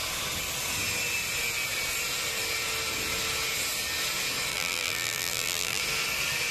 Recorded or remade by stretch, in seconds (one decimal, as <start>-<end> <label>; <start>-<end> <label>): 0.0-4.5 recorded; 4.5-5.8 remade; 5.8-6.5 recorded